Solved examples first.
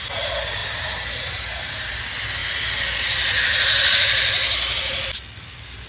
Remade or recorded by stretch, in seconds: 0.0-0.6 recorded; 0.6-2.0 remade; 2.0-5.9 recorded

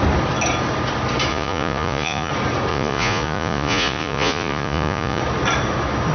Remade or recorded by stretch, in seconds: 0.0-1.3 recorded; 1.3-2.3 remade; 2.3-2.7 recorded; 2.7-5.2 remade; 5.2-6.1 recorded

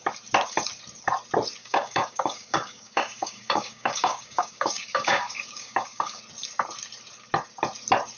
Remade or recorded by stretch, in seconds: 0.0-1.6 recorded; 1.6-6.2 remade; 6.2-8.2 recorded

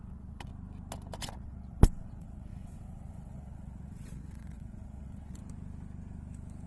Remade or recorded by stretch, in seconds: 0.0-0.5 remade; 0.5-1.2 recorded; 1.2-5.4 remade; 5.4-6.7 recorded